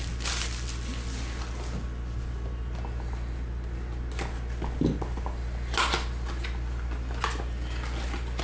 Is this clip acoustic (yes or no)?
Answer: yes